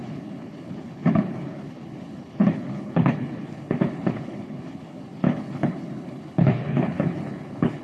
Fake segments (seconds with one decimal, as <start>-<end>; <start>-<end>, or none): 0.0-7.8